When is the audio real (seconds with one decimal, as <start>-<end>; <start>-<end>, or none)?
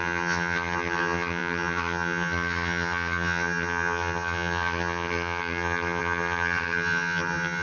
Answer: none